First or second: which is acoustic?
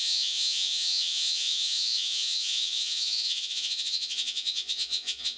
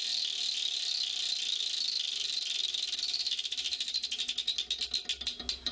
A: second